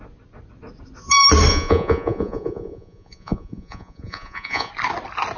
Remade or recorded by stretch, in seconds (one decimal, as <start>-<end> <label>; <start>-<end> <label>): 0.0-1.5 recorded; 1.5-4.7 remade; 4.7-5.4 recorded